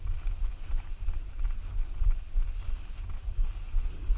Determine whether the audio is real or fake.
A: real